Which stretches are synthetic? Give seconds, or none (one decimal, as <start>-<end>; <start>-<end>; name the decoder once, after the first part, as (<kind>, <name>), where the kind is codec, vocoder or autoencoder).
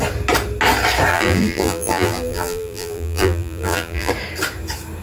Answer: 1.1-4.1 (vocoder, BigVGAN v2)